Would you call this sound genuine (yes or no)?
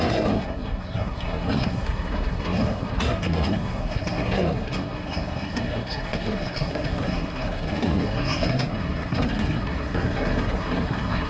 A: no